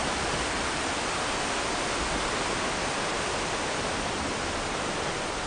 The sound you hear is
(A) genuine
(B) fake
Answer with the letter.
A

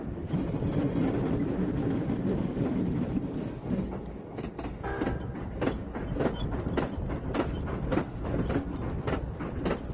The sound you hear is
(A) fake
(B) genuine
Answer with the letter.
B